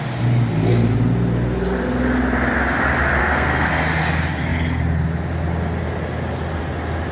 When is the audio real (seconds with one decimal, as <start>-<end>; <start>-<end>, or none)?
0.0-3.2; 3.7-7.1

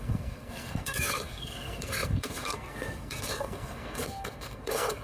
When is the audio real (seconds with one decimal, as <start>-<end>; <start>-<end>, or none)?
none